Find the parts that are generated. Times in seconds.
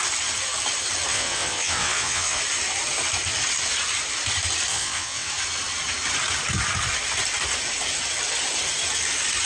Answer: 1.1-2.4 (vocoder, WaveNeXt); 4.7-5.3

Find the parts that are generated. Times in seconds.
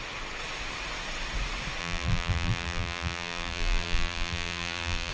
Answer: 1.8-5.1 (vocoder, BigVGAN v2)